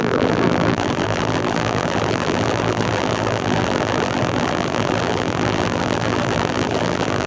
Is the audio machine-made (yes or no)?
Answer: yes